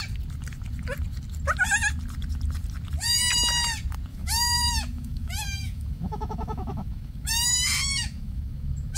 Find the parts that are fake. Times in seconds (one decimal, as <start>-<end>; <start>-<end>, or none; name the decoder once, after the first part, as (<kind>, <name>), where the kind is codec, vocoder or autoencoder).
4.1-9.0 (autoencoder, DAC-VAE)